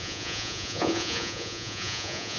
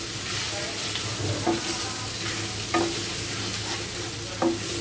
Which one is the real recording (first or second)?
second